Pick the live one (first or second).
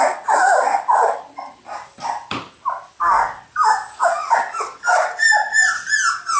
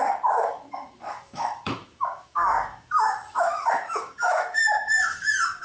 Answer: first